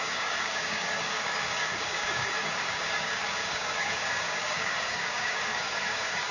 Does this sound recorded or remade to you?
remade